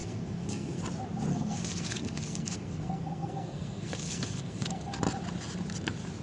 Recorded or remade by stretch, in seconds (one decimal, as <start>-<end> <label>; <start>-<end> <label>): 0.0-0.8 remade; 0.8-1.3 recorded; 1.3-5.0 remade; 5.0-6.2 recorded